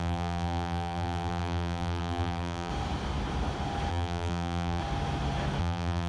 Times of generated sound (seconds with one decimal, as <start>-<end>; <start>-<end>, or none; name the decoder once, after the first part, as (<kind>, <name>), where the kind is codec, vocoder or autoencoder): 0.0-2.7 (vocoder, BigVGAN v2); 3.9-4.8; 5.6-6.1